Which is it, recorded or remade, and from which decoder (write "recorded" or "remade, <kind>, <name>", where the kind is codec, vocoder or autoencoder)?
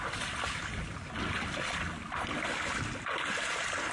recorded